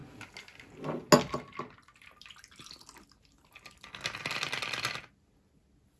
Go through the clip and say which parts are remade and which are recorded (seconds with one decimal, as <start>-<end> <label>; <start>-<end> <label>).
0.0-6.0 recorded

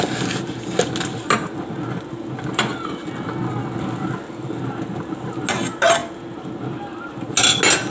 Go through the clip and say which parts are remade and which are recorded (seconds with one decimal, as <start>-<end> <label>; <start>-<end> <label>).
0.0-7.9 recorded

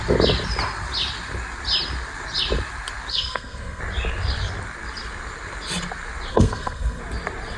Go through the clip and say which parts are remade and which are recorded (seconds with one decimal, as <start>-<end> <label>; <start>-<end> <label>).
0.0-3.1 recorded; 3.1-3.8 remade; 3.8-6.3 recorded; 6.3-7.0 remade; 7.0-7.6 recorded

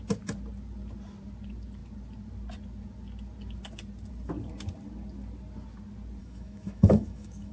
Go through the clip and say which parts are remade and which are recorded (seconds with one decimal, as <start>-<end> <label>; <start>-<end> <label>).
0.0-6.2 recorded; 6.2-7.5 remade